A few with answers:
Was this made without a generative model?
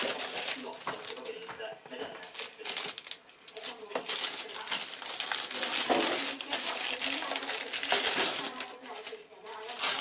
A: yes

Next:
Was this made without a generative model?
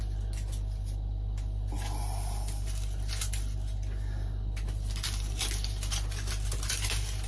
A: yes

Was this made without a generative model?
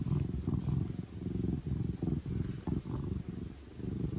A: yes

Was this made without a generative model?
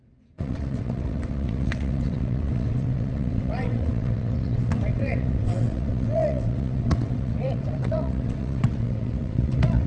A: no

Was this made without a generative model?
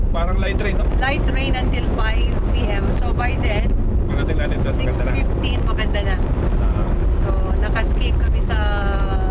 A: yes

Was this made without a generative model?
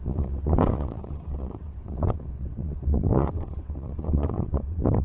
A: no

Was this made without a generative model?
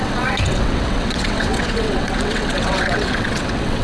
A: no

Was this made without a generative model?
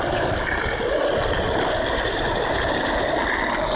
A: yes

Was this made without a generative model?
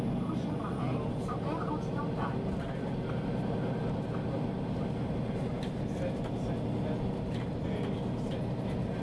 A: yes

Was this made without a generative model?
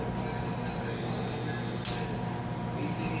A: yes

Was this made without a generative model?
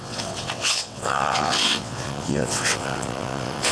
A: no